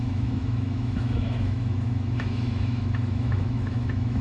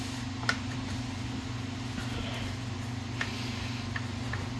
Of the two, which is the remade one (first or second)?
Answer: first